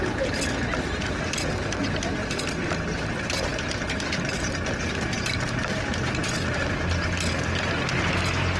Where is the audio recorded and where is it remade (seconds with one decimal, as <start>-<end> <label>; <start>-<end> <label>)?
0.0-8.6 recorded